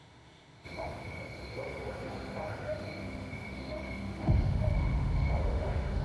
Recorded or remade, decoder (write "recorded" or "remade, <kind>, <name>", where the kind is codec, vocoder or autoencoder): remade, autoencoder, DAC-VAE